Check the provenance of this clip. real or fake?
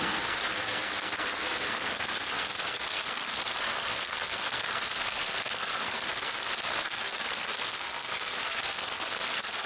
fake